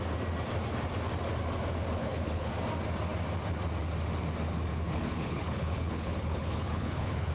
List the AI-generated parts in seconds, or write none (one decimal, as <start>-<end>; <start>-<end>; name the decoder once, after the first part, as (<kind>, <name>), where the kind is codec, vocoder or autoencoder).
2.0-2.5 (codec, HILCodec); 4.7-7.3